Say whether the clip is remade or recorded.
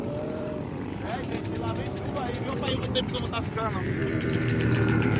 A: remade